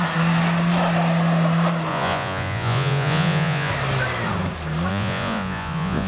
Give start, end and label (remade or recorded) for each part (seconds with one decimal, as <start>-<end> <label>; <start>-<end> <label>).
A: 0.0-1.9 recorded; 1.9-3.7 remade; 3.7-4.9 recorded; 4.9-6.1 remade